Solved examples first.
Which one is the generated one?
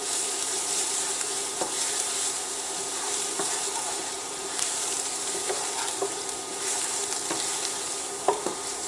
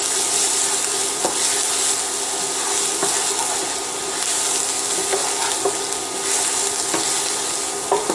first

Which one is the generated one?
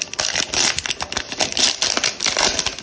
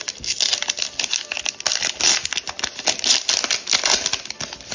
first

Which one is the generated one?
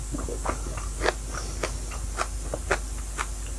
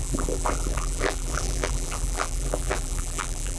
second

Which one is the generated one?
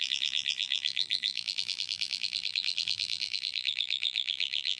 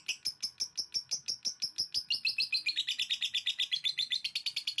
first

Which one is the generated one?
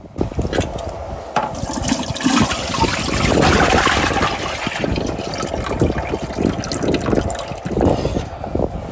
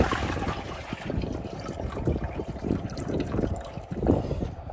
second